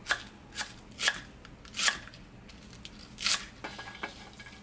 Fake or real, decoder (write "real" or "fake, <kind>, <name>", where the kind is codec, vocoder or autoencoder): real